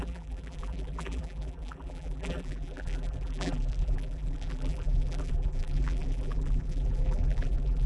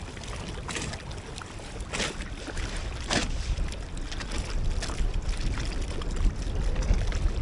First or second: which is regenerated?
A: first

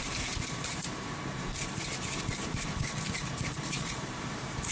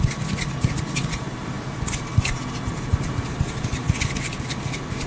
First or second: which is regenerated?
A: first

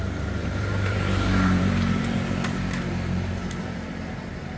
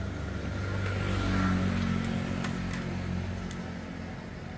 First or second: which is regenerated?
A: first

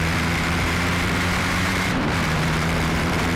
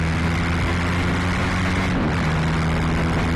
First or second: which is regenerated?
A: first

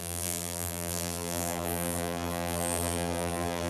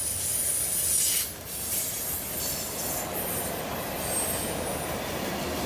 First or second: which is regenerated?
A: first